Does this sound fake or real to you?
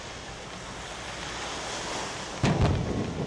real